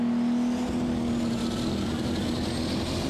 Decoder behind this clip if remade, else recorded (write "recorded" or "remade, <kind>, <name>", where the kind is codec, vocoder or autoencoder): recorded